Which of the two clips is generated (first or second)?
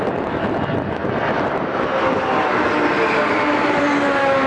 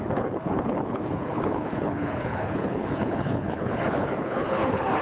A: second